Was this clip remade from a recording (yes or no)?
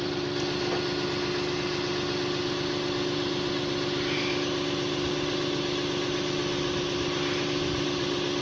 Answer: no